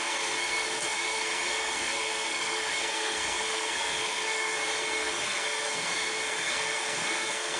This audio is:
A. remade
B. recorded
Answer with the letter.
A